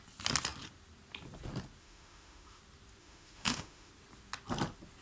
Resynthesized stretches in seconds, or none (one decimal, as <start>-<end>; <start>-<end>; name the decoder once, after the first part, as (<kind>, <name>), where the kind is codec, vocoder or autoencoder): 1.8-2.6 (autoencoder, DAC-VAE); 3.0-3.9

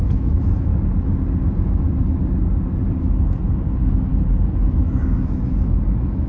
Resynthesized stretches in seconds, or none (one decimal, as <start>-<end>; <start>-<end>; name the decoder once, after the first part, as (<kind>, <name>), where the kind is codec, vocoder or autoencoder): 0.0-0.7 (autoencoder, DAC-VAE); 3.0-4.1; 4.7-6.3

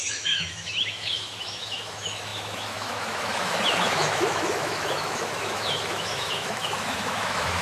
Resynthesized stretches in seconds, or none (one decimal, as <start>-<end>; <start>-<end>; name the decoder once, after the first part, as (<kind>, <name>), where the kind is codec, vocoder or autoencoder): 0.0-7.6 (autoencoder, DAC-VAE)

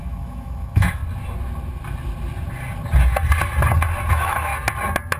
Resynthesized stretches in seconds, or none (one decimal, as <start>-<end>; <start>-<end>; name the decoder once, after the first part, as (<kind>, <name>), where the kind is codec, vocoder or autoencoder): 0.0-1.0 (autoencoder, DAC-VAE); 4.1-4.5

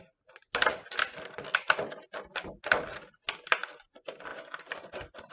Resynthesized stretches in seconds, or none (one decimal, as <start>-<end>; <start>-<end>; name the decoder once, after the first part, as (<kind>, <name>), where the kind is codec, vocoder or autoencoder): none

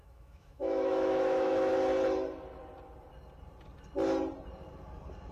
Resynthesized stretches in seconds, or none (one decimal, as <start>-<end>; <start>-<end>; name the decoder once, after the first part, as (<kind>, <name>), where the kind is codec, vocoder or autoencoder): 0.0-1.7 (autoencoder, DAC-VAE)

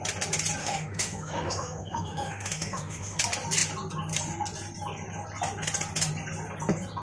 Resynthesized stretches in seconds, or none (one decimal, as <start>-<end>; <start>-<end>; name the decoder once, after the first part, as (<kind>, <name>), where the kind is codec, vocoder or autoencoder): 0.6-3.2 (autoencoder, DAC-VAE)

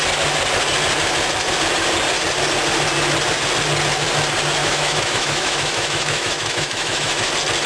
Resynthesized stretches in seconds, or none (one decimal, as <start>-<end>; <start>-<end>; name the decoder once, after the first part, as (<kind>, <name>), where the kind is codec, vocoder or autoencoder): 4.6-7.3 (autoencoder, DAC-VAE)